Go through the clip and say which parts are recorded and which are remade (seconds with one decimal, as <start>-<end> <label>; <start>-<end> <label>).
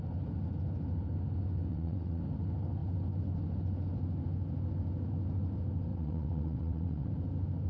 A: 0.0-1.7 recorded; 1.7-2.2 remade; 2.2-5.9 recorded; 5.9-7.1 remade; 7.1-7.7 recorded